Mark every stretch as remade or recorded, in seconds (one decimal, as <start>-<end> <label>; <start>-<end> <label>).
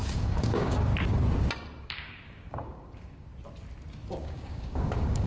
0.0-0.9 remade; 0.9-1.8 recorded; 1.8-3.3 remade; 3.3-4.2 recorded; 4.2-5.3 remade